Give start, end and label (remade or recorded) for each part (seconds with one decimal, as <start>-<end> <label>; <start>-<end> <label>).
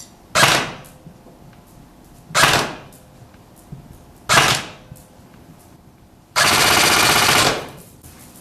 0.0-5.0 recorded; 5.0-7.9 remade; 7.9-8.4 recorded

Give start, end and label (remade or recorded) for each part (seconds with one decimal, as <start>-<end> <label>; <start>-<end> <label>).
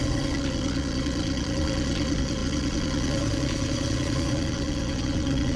0.0-5.6 remade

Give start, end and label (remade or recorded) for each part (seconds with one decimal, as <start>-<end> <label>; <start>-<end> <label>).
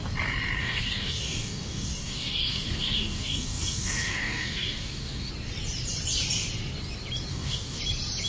0.0-0.6 recorded; 0.6-5.3 remade; 5.3-7.3 recorded; 7.3-7.8 remade; 7.8-8.3 recorded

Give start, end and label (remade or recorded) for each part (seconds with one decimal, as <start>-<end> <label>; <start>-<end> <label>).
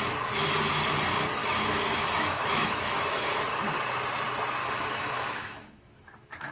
0.0-1.4 recorded; 1.4-3.6 remade; 3.6-4.6 recorded; 4.6-6.5 remade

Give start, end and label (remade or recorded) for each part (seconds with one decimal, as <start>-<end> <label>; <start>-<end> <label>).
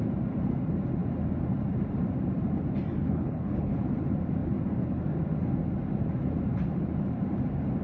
0.0-3.0 recorded; 3.0-3.9 remade; 3.9-7.8 recorded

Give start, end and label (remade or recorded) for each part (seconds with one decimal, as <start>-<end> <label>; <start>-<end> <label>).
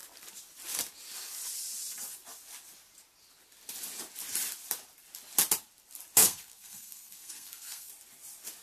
0.0-6.2 recorded; 6.2-7.9 remade; 7.9-8.6 recorded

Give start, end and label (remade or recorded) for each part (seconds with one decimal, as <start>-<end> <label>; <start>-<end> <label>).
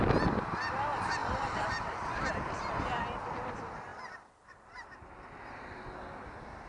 0.0-1.2 recorded; 1.2-3.0 remade; 3.0-3.9 recorded; 3.9-5.4 remade; 5.4-6.7 recorded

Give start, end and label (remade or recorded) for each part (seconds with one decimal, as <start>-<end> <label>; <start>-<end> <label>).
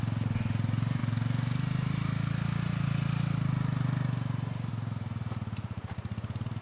0.0-6.6 recorded